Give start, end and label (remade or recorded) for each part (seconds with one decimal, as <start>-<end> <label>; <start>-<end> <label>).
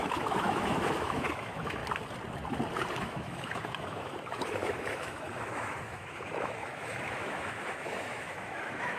0.0-1.8 remade; 1.8-3.0 recorded; 3.0-9.0 remade